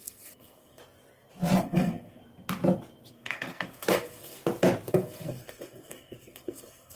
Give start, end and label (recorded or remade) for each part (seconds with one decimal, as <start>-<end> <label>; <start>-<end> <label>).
0.0-0.8 remade; 0.8-1.6 recorded; 1.6-2.2 remade; 2.2-3.1 recorded; 3.1-4.4 remade; 4.4-4.9 recorded; 4.9-7.0 remade